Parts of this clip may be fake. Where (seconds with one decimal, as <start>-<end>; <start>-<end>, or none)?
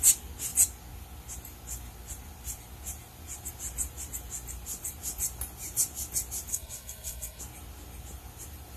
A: 6.5-7.4